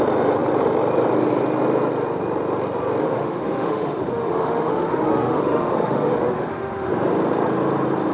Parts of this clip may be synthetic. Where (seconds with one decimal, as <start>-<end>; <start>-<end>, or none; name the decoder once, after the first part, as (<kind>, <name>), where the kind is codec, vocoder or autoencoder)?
3.0-6.9 (autoencoder, DAC-VAE)